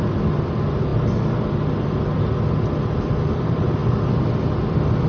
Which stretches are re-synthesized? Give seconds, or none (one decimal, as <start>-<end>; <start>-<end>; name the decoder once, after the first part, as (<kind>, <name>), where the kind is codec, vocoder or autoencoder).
none